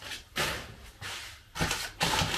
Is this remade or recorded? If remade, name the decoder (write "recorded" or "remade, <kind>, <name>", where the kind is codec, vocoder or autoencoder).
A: recorded